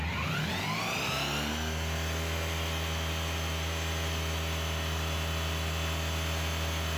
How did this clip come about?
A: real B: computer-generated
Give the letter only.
A